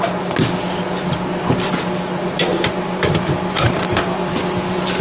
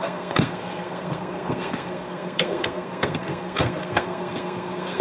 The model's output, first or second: second